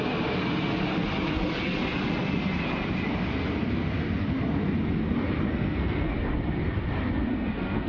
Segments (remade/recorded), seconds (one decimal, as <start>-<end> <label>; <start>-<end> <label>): 0.0-5.5 recorded; 5.5-6.1 remade; 6.1-7.3 recorded; 7.3-7.9 remade